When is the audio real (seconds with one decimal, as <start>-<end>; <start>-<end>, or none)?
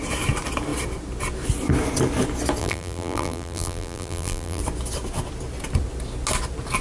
0.0-2.6; 4.6-6.8